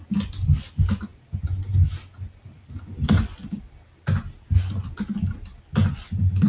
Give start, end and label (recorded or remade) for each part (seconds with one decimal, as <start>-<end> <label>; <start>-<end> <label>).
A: 0.0-6.5 recorded